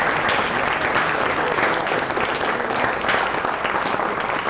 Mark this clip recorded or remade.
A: recorded